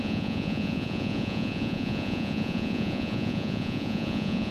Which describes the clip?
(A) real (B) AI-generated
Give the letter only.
B